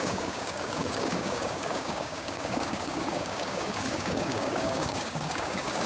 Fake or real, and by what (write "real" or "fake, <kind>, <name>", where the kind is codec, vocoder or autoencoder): fake, codec, DAC